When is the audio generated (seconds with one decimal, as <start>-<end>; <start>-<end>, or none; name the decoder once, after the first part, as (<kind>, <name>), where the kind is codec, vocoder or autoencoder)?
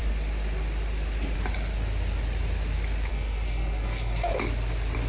3.1-4.3 (codec, SNAC)